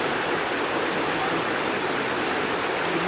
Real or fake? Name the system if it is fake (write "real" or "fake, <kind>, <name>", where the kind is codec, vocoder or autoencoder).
real